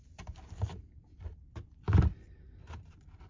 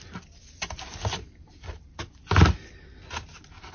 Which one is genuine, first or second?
second